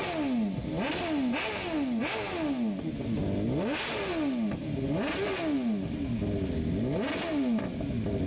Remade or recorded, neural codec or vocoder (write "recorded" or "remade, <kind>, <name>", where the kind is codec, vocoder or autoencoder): recorded